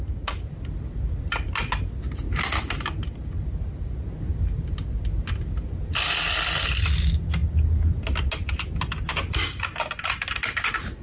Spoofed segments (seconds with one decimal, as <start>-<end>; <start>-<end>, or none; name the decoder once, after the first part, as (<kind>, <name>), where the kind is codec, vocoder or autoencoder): none